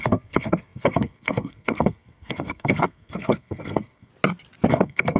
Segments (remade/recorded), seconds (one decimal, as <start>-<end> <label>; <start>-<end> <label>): 0.0-4.1 remade; 4.1-4.7 recorded; 4.7-5.2 remade